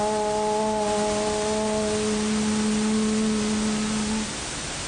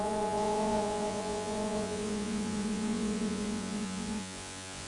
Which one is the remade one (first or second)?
second